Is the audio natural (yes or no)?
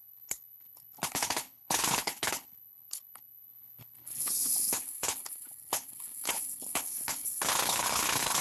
no